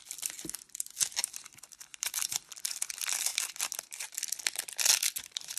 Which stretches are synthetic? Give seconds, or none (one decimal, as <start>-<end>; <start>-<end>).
1.2-2.9